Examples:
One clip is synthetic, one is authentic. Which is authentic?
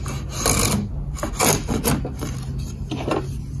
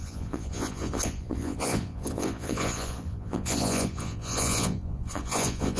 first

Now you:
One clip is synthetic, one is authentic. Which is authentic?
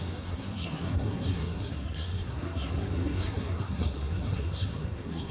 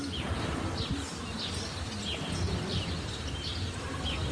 second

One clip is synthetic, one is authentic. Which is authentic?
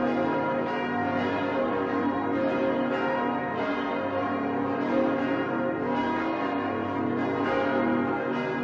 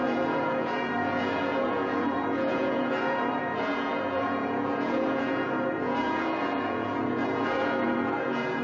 first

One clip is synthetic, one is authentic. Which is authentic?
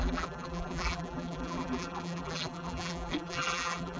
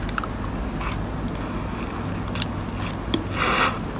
second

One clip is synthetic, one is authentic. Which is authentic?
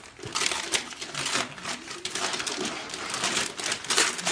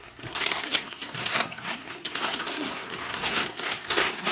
first